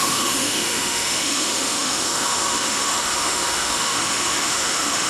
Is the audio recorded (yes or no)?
no